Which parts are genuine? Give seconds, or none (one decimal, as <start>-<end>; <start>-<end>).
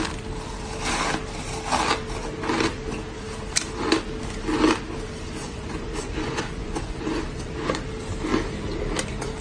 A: 0.0-5.4; 7.5-9.4